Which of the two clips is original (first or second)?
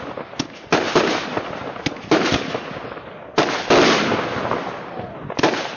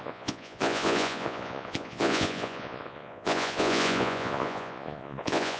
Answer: first